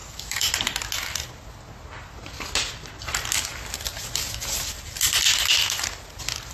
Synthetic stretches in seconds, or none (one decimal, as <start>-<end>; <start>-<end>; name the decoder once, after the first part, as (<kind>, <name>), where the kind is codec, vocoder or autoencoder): 0.0-0.5 (codec, DAC)